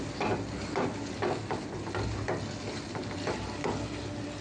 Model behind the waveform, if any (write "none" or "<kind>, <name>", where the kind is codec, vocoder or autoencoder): none